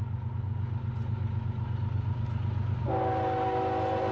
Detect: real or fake real